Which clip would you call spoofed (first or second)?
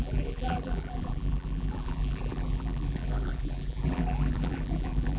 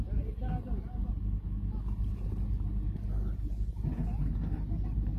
first